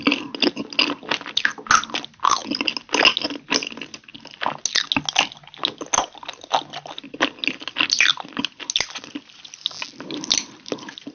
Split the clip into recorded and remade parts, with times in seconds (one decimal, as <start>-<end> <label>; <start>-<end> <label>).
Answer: 0.0-11.1 recorded